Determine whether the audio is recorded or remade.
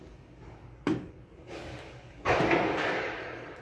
remade